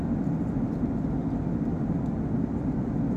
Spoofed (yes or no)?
no